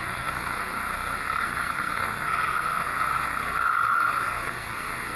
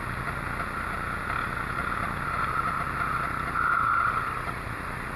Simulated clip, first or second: first